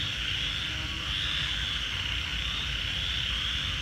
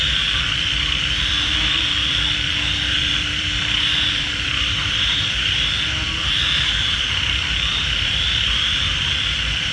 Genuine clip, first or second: first